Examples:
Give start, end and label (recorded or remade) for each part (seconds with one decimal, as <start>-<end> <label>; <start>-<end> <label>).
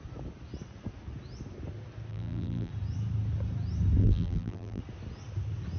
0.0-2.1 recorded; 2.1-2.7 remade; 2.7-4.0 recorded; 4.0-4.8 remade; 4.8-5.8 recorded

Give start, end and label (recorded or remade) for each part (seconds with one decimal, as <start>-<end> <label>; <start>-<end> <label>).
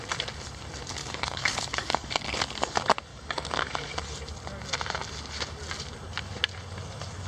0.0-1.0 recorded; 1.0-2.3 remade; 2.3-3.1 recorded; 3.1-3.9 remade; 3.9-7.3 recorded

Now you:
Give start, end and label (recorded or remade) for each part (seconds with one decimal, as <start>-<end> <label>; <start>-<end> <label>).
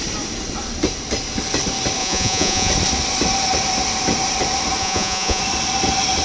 0.0-2.0 recorded; 2.0-2.7 remade; 2.7-4.8 recorded; 4.8-5.4 remade; 5.4-6.2 recorded